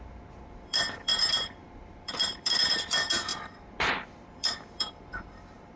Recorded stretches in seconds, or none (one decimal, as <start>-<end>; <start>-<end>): none